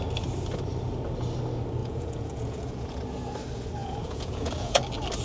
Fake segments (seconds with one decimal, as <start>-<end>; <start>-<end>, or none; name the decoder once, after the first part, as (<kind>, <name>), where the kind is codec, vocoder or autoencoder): 1.8-3.0 (vocoder, Vocos); 3.8-4.8